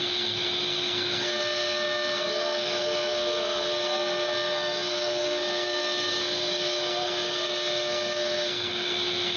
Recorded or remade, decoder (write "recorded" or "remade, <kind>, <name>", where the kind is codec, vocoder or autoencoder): remade, codec, SNAC